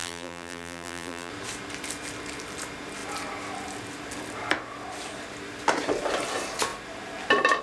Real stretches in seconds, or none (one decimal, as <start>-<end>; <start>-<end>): 1.3-7.6